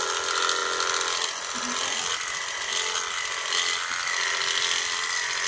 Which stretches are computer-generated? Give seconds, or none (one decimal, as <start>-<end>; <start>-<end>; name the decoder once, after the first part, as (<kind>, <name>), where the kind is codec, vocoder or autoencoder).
none